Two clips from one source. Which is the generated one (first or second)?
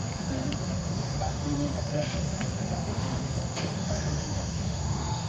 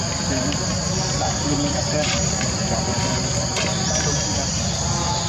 first